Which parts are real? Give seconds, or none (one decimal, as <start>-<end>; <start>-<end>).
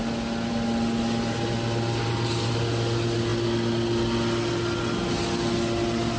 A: 0.0-6.2